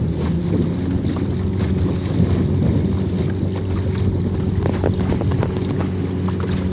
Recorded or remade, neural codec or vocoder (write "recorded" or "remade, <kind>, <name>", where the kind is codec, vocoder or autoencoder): recorded